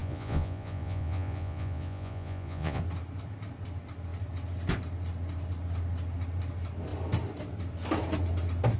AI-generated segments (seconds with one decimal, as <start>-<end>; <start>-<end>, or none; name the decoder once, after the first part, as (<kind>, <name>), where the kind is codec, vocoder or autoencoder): 0.0-2.8 (vocoder, Vocos)